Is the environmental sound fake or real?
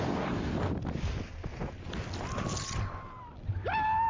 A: real